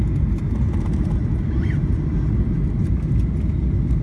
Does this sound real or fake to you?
real